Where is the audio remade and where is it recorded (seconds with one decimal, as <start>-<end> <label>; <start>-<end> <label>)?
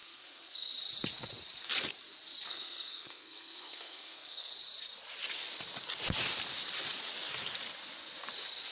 0.0-0.7 remade; 0.7-2.5 recorded; 2.5-4.5 remade; 4.5-8.7 recorded